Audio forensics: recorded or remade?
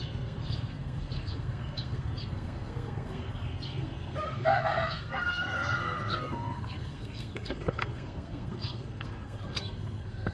remade